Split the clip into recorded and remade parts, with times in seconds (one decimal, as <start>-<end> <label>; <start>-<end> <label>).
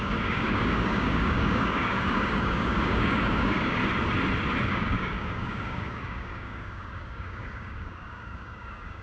0.0-3.8 remade; 3.8-4.6 recorded; 4.6-9.0 remade